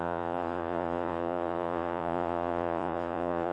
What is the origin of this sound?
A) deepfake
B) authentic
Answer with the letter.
A